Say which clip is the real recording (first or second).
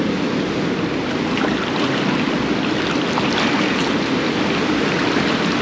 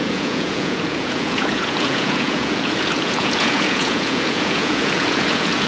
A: first